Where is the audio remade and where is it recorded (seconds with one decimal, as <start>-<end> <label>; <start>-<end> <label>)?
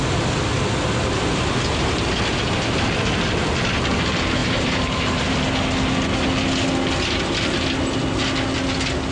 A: 0.0-4.4 recorded; 4.4-5.4 remade; 5.4-9.1 recorded